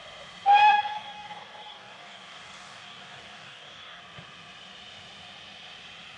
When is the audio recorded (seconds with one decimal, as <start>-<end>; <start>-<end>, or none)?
0.0-0.6; 4.0-6.2